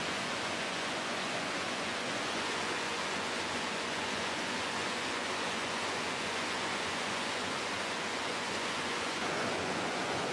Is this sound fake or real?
fake